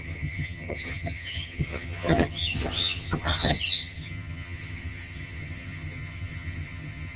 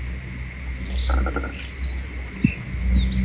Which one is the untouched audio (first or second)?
second